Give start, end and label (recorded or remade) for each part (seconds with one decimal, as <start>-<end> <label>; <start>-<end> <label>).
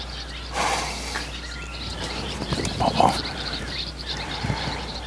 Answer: 0.0-1.9 recorded; 1.9-5.1 remade